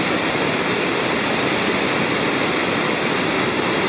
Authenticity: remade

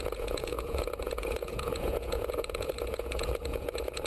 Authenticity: remade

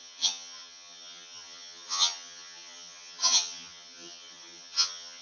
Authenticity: remade